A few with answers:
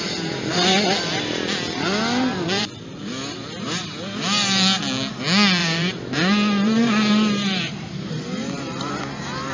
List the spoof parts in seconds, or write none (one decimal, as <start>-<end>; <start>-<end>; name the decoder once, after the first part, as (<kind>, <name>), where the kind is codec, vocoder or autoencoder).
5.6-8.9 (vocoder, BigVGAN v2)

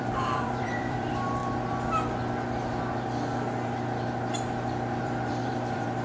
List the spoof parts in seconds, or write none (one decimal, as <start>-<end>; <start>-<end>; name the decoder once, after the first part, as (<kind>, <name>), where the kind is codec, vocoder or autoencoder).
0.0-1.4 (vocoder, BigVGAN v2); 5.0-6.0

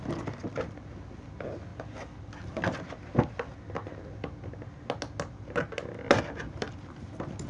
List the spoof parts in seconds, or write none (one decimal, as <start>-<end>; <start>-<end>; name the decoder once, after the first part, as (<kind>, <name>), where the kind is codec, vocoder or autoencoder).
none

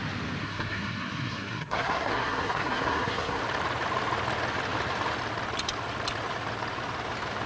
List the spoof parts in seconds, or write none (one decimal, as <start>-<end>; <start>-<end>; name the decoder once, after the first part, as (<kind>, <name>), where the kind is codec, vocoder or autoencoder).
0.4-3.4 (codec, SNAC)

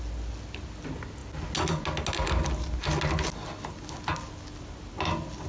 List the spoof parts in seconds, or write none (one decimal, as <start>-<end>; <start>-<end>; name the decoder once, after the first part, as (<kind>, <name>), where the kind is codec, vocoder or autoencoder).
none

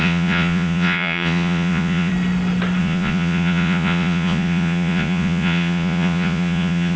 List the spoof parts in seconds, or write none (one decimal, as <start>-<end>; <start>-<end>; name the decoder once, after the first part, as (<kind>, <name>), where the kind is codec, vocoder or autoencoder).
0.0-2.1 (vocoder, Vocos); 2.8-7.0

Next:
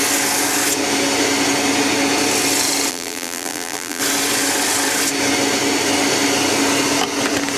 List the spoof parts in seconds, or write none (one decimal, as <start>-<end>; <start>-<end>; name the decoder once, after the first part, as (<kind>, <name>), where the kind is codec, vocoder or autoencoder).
2.9-4.0 (vocoder, BigVGAN v2)